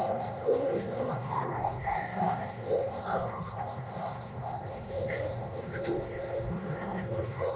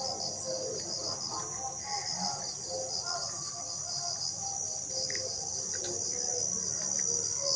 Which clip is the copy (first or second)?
first